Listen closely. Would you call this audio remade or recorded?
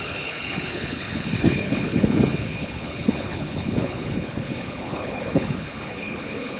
remade